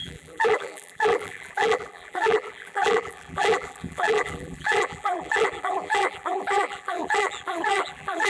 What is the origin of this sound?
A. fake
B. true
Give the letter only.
A